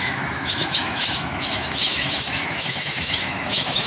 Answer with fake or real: fake